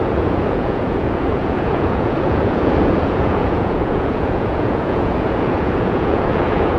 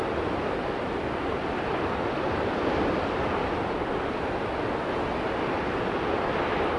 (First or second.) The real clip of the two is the second